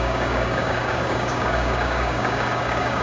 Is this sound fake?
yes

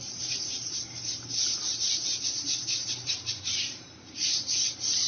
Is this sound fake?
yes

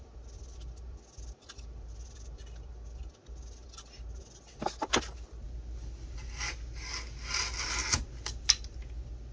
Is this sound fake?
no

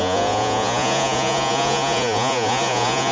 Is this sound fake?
yes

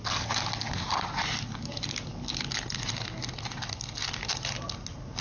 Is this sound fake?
no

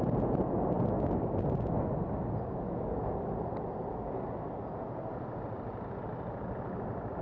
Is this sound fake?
no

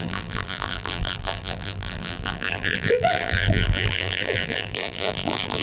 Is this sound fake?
yes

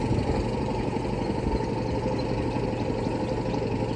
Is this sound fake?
no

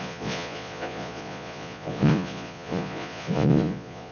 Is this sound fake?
yes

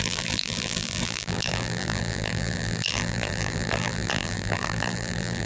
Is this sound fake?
yes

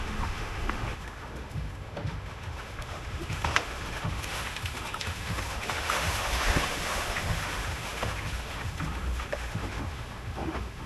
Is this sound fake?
yes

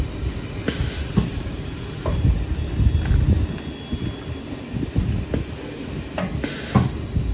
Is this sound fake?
no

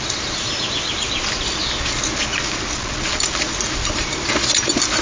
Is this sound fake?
no